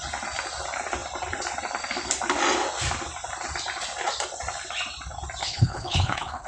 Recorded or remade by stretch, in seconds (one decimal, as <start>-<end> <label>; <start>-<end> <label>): 0.0-5.4 recorded; 5.4-6.5 remade

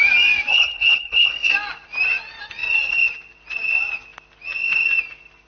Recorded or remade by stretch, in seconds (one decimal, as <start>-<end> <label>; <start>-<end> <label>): 0.0-0.5 recorded; 0.5-1.5 remade; 1.5-5.5 recorded

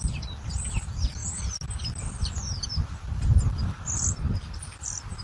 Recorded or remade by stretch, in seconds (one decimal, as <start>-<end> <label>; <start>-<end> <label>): 0.0-5.2 recorded

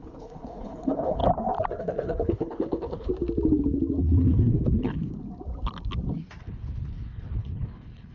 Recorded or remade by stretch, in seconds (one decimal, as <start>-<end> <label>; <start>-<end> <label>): 0.0-1.2 remade; 1.2-1.8 recorded; 1.8-3.1 remade; 3.1-4.0 recorded; 4.0-5.1 remade; 5.1-6.4 recorded; 6.4-8.1 remade